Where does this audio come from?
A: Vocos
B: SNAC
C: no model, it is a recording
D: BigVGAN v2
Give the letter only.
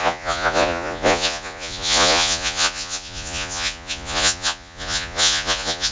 A